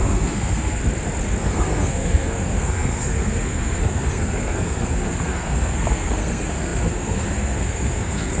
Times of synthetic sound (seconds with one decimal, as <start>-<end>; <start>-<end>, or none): 0.0-0.8; 1.4-8.4